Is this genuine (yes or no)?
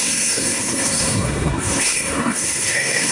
no